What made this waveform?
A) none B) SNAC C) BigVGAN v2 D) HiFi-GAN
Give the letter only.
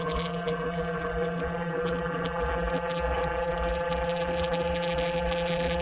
C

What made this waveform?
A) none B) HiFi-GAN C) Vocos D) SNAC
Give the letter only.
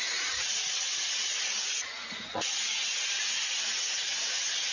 C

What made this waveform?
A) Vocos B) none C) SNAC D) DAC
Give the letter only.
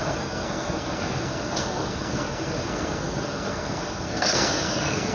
C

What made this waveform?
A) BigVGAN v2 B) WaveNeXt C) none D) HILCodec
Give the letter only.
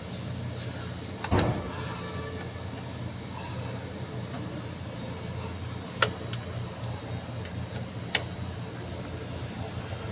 C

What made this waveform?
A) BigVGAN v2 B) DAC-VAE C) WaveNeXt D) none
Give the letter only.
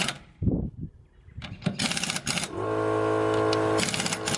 D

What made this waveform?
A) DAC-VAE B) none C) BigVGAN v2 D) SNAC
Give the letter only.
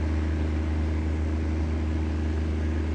B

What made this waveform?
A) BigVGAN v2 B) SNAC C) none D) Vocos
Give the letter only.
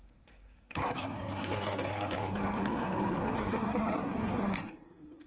B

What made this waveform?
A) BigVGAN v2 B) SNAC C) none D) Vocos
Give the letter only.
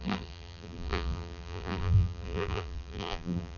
A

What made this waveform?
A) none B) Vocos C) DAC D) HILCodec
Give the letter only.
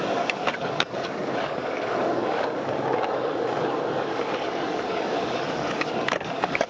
C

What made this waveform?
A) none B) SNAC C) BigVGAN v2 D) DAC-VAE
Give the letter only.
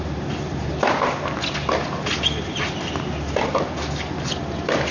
A